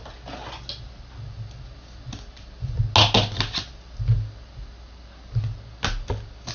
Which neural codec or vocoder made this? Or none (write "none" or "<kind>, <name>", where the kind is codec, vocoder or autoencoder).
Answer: none